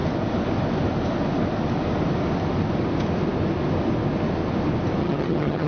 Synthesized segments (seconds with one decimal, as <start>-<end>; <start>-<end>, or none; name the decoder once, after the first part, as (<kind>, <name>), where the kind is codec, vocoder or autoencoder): 5.0-5.7 (vocoder, HiFi-GAN)